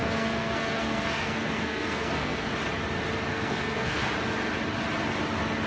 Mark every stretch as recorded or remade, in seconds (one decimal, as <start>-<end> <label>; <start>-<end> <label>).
0.0-2.5 remade; 2.5-3.3 recorded; 3.3-4.1 remade; 4.1-5.7 recorded